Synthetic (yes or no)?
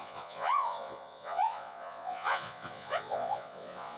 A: yes